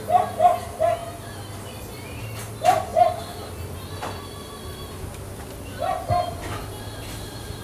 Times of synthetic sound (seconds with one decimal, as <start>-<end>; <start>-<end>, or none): none